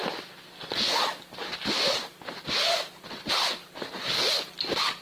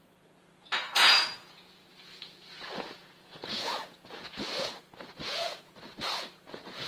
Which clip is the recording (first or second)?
first